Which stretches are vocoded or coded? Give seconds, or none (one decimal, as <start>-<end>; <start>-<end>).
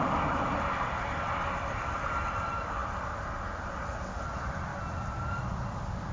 none